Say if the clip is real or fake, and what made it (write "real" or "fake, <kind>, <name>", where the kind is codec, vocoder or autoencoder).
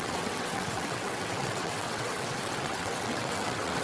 fake, vocoder, WaveNeXt